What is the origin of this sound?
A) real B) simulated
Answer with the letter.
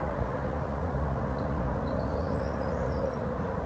B